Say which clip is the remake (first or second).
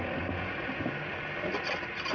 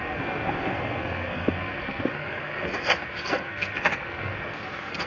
second